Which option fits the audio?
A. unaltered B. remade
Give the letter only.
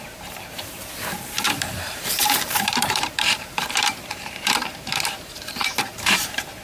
B